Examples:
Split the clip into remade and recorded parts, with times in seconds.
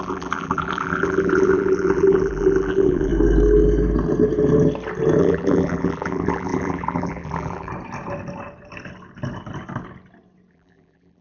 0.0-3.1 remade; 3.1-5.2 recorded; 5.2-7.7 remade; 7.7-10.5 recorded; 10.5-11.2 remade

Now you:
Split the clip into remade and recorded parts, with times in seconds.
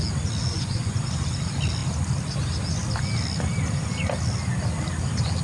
0.0-0.5 recorded; 0.5-1.1 remade; 1.1-5.4 recorded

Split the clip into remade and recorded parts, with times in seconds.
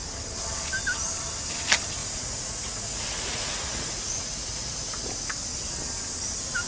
0.0-2.0 recorded; 2.0-5.4 remade; 5.4-6.7 recorded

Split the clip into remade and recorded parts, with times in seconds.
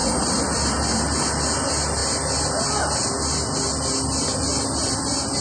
0.0-5.4 recorded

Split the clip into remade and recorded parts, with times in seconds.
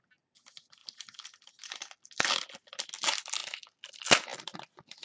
0.0-0.8 recorded; 0.8-1.6 remade; 1.6-5.0 recorded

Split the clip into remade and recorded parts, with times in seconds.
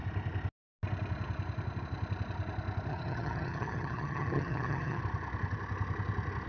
0.0-2.9 recorded; 2.9-5.0 remade; 5.0-6.5 recorded